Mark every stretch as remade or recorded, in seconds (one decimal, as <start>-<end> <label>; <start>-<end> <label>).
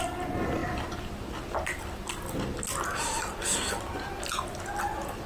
0.0-5.3 recorded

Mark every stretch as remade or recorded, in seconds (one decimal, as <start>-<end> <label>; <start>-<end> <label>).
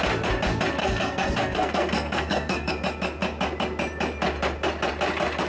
0.0-0.8 recorded; 0.8-2.7 remade; 2.7-5.5 recorded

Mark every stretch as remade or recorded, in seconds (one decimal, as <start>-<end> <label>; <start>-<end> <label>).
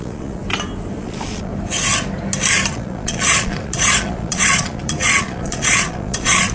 0.0-0.4 remade; 0.4-1.0 recorded; 1.0-1.5 remade; 1.5-2.7 recorded; 2.7-6.5 remade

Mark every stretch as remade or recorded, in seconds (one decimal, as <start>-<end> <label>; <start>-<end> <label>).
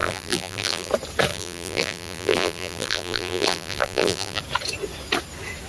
0.0-0.9 remade; 0.9-1.3 recorded; 1.3-4.4 remade; 4.4-5.7 recorded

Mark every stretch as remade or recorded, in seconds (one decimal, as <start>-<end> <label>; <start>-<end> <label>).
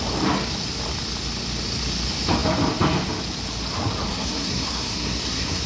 0.0-4.1 recorded; 4.1-5.7 remade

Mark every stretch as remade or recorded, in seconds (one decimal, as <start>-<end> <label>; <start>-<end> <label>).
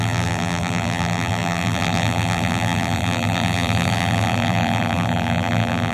0.0-5.9 remade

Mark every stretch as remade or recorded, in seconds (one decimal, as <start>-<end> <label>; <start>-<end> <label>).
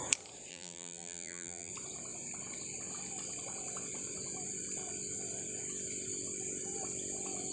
0.0-0.5 recorded; 0.5-1.7 remade; 1.7-7.5 recorded